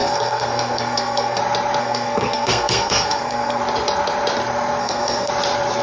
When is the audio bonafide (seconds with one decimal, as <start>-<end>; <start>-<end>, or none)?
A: 1.4-1.8; 3.6-4.8; 5.3-5.8